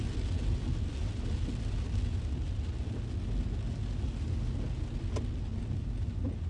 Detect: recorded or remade recorded